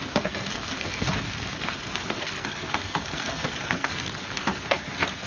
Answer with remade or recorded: remade